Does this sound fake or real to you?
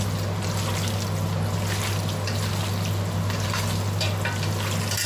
real